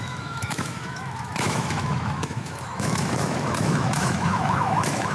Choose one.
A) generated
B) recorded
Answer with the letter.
A